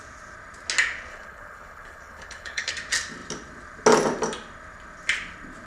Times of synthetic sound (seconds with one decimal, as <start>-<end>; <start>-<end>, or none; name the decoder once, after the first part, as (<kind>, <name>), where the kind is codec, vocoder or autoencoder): 1.1-2.7 (codec, HILCodec)